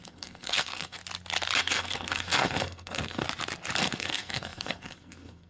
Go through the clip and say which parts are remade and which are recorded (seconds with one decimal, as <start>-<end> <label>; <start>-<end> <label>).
0.0-1.0 remade; 1.0-1.6 recorded; 1.6-3.2 remade; 3.2-3.8 recorded; 3.8-5.5 remade